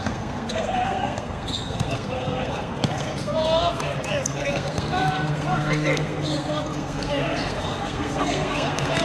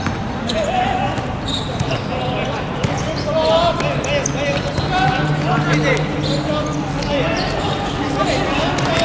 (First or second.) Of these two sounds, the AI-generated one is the first